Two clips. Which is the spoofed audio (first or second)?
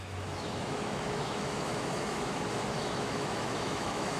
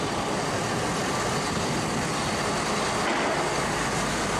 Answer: first